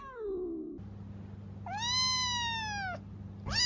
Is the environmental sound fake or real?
real